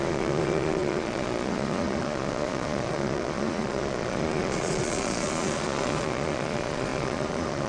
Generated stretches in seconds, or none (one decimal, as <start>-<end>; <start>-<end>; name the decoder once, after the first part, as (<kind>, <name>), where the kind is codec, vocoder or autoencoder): 0.0-7.7 (vocoder, Vocos)